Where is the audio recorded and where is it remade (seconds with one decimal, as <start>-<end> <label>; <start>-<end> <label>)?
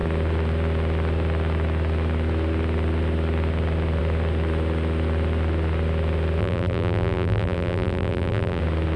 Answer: 0.0-6.4 recorded; 6.4-8.6 remade; 8.6-9.0 recorded